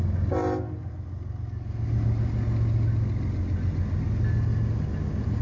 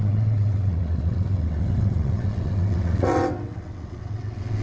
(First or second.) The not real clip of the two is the second